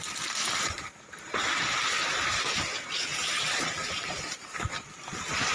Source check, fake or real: real